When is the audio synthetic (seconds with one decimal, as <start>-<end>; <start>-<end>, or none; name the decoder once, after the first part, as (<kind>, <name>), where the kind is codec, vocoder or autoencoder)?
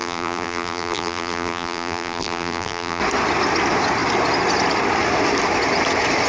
0.0-3.0 (vocoder, BigVGAN v2)